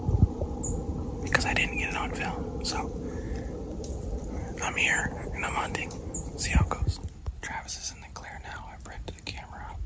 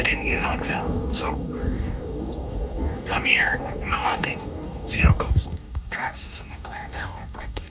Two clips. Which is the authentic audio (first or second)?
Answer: first